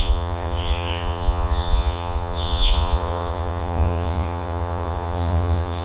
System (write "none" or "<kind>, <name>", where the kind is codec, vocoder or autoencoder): vocoder, Vocos